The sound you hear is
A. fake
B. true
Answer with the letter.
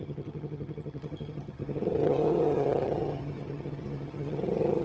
A